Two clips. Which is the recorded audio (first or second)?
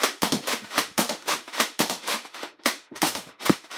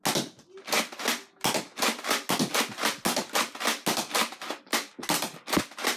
second